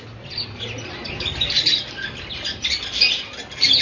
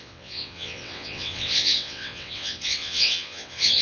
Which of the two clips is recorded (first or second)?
first